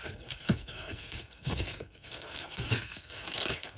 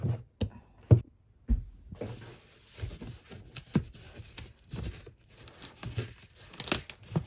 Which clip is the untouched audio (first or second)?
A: second